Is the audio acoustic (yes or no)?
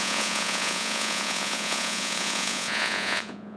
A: no